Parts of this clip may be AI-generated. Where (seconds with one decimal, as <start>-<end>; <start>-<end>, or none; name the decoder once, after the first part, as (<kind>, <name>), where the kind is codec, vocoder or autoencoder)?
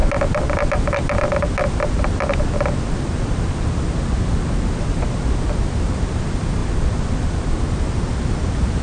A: 6.6-7.6 (vocoder, BigVGAN v2)